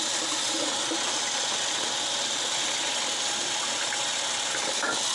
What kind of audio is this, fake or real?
real